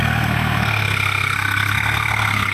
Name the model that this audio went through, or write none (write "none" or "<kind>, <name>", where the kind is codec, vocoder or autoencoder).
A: codec, SNAC